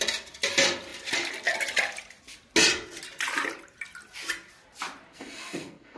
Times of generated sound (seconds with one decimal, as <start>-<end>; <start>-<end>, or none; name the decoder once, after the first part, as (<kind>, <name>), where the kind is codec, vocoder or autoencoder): 5.1-6.0 (codec, SNAC)